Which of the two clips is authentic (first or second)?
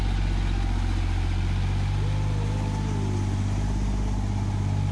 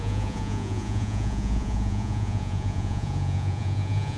first